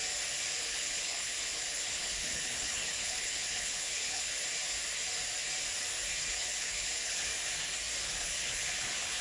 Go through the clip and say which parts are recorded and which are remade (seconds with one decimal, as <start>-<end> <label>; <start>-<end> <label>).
0.0-0.6 recorded; 0.6-4.4 remade; 4.4-6.3 recorded; 6.3-7.3 remade; 7.3-8.0 recorded; 8.0-9.2 remade

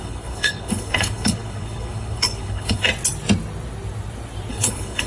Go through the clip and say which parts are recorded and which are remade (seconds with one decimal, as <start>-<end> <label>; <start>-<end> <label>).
0.0-2.9 remade; 2.9-4.5 recorded; 4.5-5.1 remade

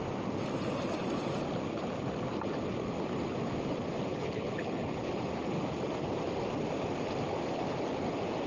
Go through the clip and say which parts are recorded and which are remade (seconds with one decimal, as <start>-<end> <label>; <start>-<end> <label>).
0.0-4.1 recorded; 4.1-5.1 remade; 5.1-8.5 recorded

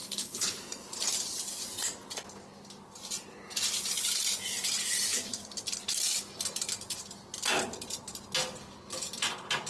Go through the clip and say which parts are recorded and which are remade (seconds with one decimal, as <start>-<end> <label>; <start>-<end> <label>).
0.0-0.6 remade; 0.6-9.7 recorded

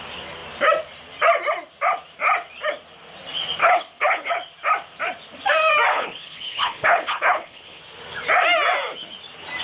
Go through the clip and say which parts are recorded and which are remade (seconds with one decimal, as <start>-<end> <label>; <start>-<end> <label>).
0.0-3.6 recorded; 3.6-4.3 remade; 4.3-5.9 recorded; 5.9-7.8 remade; 7.8-9.6 recorded